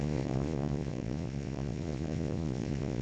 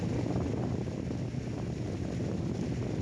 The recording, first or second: second